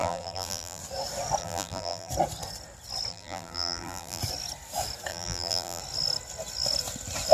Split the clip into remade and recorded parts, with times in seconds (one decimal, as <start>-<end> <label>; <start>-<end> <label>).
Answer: 0.0-0.8 remade; 0.8-1.4 recorded; 1.4-2.1 remade; 2.1-3.1 recorded; 3.1-4.2 remade; 4.2-5.1 recorded; 5.1-5.8 remade; 5.8-7.3 recorded